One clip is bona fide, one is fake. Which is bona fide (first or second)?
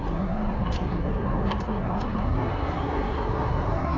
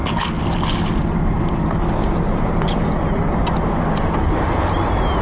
second